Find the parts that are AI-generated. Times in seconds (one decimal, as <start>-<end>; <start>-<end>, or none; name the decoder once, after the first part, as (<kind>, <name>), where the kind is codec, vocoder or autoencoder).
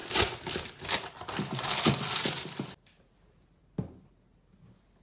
none